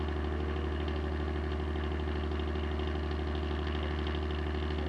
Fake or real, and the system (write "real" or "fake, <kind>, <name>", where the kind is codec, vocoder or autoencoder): real